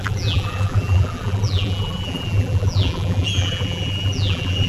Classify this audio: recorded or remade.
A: remade